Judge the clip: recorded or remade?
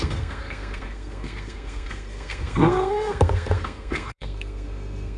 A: remade